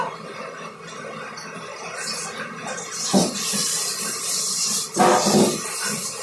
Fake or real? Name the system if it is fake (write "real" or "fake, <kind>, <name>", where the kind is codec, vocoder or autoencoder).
real